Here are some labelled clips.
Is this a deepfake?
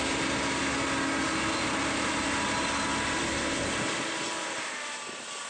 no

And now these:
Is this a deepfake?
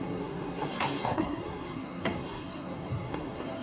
yes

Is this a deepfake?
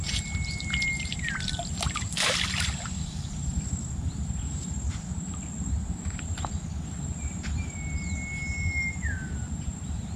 no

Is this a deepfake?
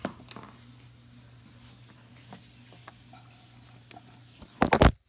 no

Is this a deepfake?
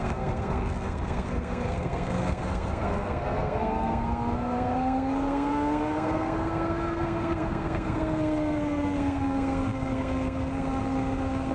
yes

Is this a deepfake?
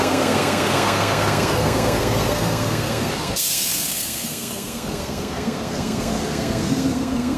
yes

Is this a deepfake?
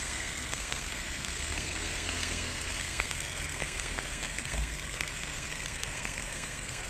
yes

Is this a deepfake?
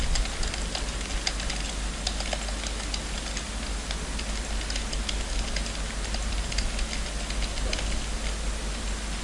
no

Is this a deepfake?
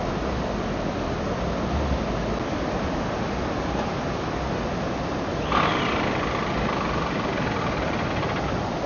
no